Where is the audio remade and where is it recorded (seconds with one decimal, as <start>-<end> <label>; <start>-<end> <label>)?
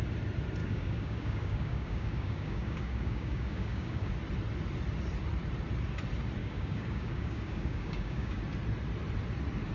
0.0-0.6 recorded; 0.6-4.1 remade; 4.1-6.4 recorded; 6.4-8.4 remade; 8.4-9.7 recorded